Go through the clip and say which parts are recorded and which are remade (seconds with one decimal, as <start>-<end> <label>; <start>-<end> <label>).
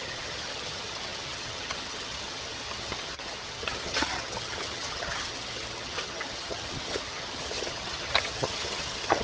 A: 0.0-9.2 remade